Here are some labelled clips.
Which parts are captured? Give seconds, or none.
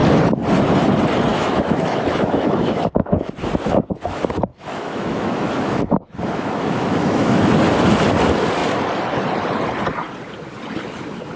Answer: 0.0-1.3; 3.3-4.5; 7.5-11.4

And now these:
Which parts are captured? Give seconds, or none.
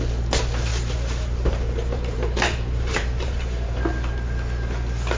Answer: 0.0-0.7; 3.8-5.2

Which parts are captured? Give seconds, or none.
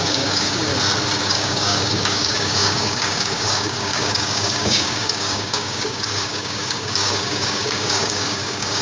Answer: 0.7-1.2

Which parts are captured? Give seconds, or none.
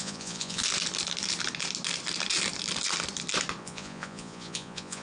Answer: 0.6-3.6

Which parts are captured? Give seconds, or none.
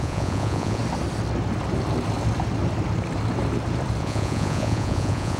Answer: 0.8-4.0